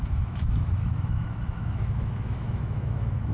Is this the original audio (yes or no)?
no